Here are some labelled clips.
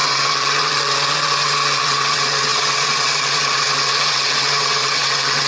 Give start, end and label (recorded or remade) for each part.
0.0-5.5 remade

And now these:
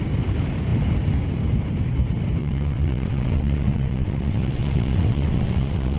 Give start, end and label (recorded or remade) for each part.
0.0-2.4 recorded; 2.4-6.0 remade

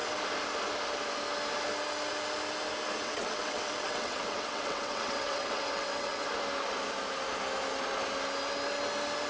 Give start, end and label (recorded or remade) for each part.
0.0-3.0 recorded; 3.0-6.3 remade; 6.3-9.3 recorded

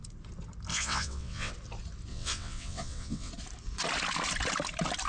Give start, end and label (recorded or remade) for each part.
0.0-0.7 recorded; 0.7-1.5 remade; 1.5-2.1 recorded; 2.1-3.3 remade; 3.3-5.1 recorded

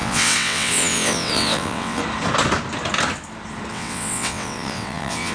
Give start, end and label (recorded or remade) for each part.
0.0-2.0 remade; 2.0-3.7 recorded; 3.7-5.3 remade